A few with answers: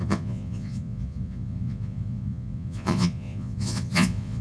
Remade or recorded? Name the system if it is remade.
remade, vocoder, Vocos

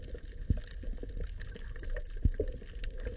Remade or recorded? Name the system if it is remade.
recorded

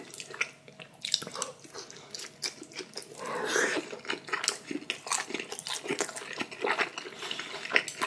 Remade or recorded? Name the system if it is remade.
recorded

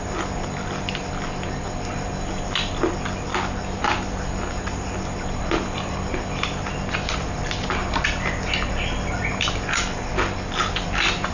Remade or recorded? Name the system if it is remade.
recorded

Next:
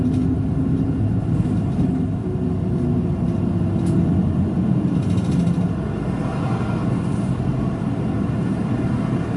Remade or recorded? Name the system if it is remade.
recorded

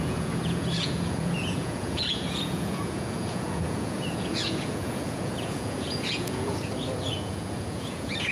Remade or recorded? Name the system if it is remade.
remade, vocoder, Vocos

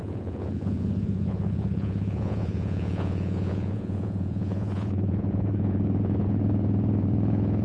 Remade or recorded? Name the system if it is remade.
remade, vocoder, Vocos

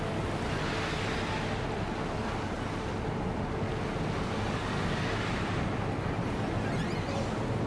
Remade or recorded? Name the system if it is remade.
recorded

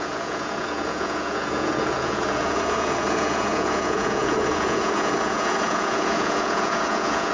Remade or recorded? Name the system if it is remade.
remade, vocoder, Vocos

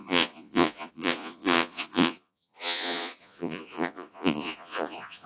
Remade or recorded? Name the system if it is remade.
remade, vocoder, Vocos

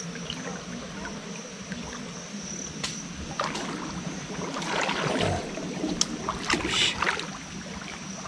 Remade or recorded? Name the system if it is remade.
recorded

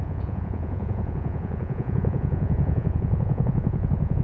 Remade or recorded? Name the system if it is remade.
remade, vocoder, Vocos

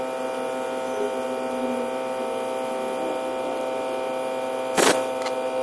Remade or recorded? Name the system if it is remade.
recorded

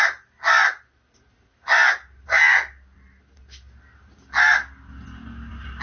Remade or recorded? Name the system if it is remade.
recorded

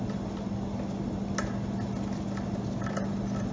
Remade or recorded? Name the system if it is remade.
recorded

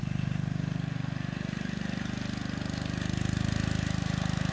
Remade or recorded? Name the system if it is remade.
recorded